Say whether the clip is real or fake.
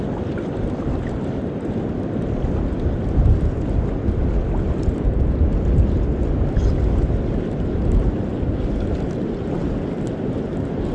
real